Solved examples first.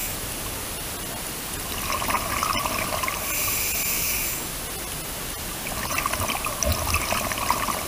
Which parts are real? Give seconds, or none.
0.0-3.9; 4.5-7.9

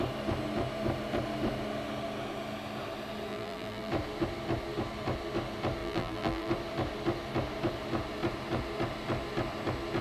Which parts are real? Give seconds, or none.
0.0-3.3; 3.9-5.8; 6.5-10.0

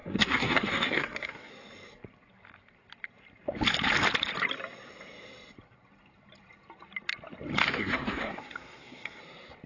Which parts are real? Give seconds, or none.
1.5-7.6; 9.2-9.7